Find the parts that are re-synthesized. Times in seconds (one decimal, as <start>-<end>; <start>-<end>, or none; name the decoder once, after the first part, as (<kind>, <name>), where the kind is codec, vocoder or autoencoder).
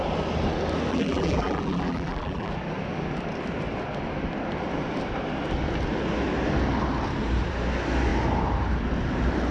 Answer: 0.9-2.5 (vocoder, BigVGAN v2)